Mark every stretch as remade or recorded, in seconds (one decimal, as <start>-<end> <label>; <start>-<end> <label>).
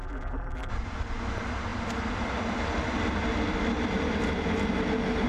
0.0-0.7 remade; 0.7-5.3 recorded